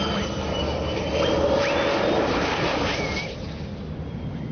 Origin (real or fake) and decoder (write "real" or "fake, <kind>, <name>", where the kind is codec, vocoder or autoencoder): real